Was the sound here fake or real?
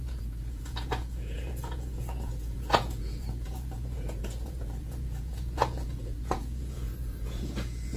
fake